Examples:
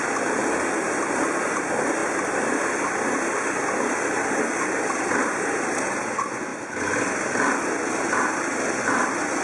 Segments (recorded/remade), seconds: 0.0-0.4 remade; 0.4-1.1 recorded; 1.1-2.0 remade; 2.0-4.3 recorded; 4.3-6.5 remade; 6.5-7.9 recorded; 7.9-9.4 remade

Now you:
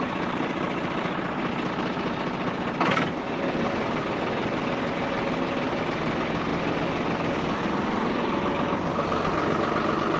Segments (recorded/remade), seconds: 0.0-10.2 recorded

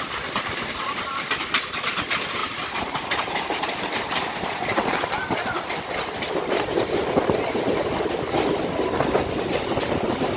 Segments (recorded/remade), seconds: 0.0-10.4 recorded

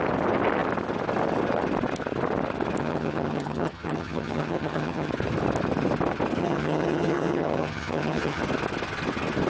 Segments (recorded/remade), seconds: 0.0-2.8 recorded; 2.8-5.1 remade; 5.1-6.4 recorded; 6.4-8.4 remade; 8.4-9.5 recorded

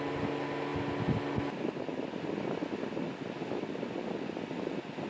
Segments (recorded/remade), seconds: 0.0-5.1 recorded